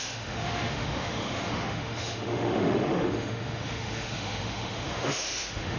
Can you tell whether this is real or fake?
fake